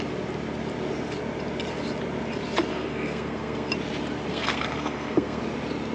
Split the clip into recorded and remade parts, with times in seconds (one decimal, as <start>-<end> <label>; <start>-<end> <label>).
0.0-2.7 recorded; 2.7-3.7 remade; 3.7-4.3 recorded; 4.3-5.4 remade; 5.4-5.9 recorded